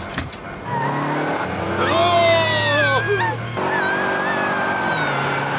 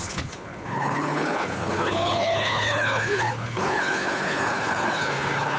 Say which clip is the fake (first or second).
second